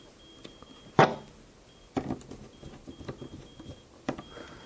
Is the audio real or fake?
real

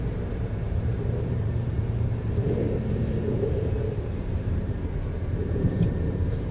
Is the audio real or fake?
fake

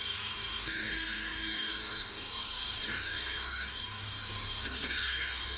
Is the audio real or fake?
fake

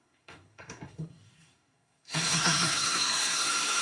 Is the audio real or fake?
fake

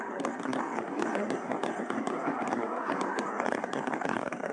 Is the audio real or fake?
fake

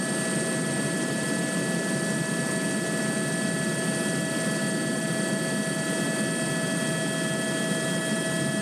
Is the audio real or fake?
real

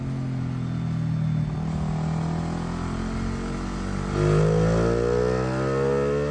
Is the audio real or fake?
real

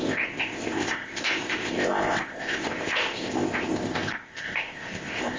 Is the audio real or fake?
fake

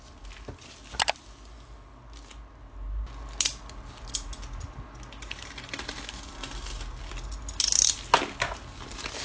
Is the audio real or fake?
real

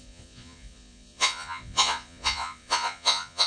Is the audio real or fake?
fake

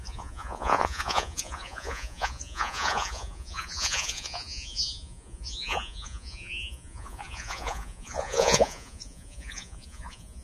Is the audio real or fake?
fake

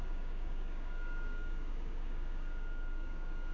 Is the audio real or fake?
fake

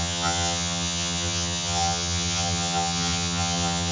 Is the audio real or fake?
fake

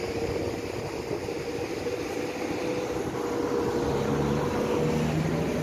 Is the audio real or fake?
real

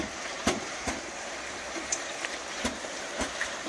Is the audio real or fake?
fake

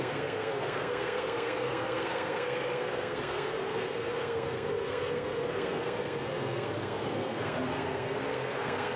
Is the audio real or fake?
fake